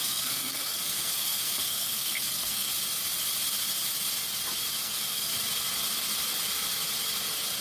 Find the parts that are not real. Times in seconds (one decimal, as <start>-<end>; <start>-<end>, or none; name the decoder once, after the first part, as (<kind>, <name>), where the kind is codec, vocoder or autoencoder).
0.0-2.7 (codec, SNAC); 4.8-5.3